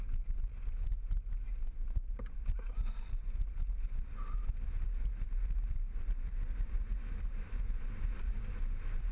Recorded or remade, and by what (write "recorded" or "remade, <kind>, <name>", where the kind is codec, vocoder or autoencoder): remade, vocoder, BigVGAN v2